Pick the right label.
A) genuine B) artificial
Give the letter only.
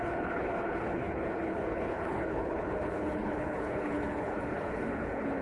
B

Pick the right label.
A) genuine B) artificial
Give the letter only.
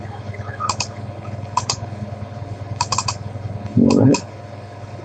B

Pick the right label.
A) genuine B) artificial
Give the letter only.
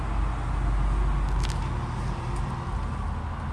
A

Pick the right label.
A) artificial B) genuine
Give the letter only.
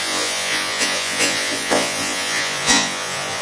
A